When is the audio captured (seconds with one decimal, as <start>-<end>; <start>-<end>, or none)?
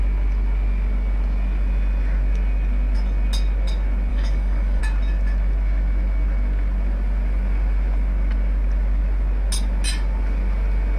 0.0-4.1; 4.8-11.0